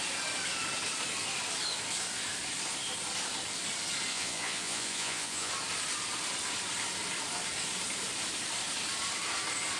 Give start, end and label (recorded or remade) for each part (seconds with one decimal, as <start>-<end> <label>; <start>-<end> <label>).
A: 0.0-4.1 recorded; 4.1-5.5 remade; 5.5-9.8 recorded